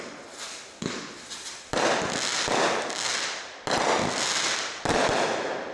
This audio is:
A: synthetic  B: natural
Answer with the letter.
B